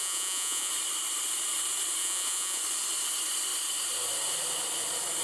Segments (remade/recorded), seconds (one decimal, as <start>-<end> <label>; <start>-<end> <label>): 0.0-0.7 remade; 0.7-2.0 recorded; 2.0-2.6 remade; 2.6-5.2 recorded